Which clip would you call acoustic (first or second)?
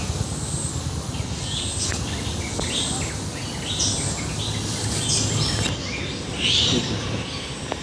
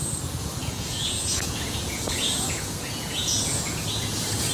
first